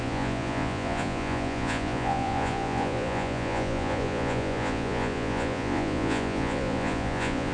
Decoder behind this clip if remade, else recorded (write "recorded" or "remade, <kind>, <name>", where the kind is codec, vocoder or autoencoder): remade, vocoder, Vocos